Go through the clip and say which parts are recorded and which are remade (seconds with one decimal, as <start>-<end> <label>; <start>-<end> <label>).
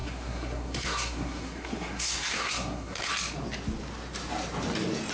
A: 0.0-3.1 remade; 3.1-5.1 recorded